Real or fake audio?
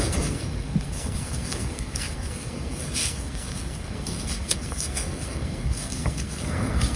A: fake